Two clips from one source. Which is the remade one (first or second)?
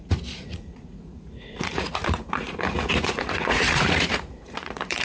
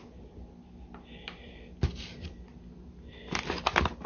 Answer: first